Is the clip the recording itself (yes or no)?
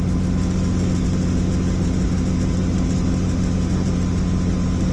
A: yes